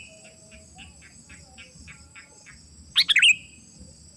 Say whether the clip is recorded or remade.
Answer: recorded